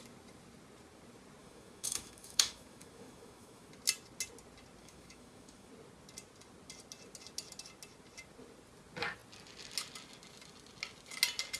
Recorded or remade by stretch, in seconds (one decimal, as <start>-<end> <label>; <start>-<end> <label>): 0.0-1.4 recorded; 1.4-3.7 remade; 3.7-4.8 recorded; 4.8-5.7 remade; 5.7-11.6 recorded